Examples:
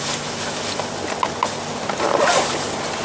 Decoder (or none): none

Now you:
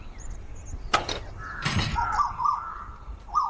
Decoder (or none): none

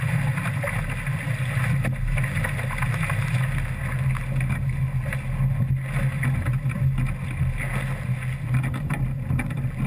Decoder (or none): none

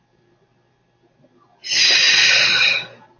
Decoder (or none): none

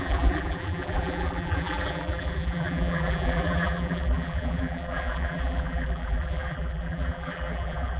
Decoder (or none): vocoder, BigVGAN v2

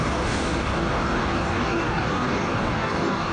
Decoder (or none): codec, DAC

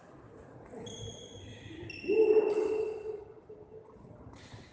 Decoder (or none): none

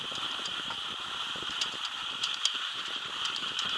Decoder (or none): vocoder, BigVGAN v2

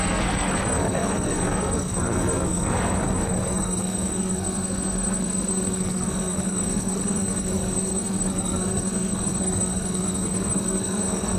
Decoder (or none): codec, SNAC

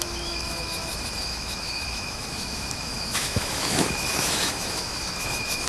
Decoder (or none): autoencoder, DAC-VAE